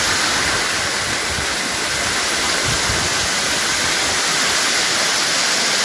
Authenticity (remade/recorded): recorded